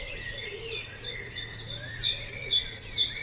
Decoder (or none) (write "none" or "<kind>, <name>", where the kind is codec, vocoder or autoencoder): vocoder, Vocos